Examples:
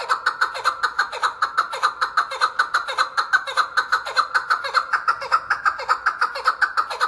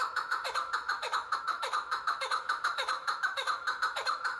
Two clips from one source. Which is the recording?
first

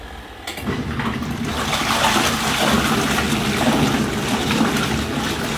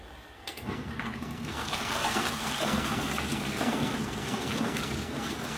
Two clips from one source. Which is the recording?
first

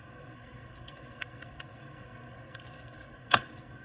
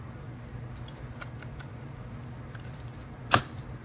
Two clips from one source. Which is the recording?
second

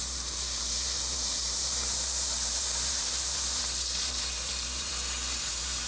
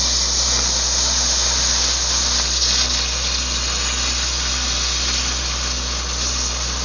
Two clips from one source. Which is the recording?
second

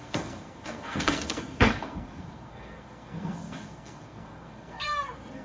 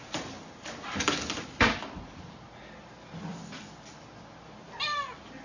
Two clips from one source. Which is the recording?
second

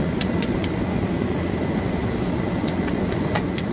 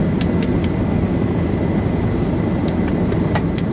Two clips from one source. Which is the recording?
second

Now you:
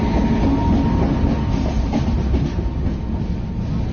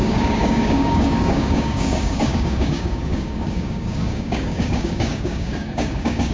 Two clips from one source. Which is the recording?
first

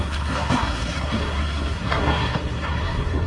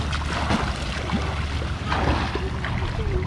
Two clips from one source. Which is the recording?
second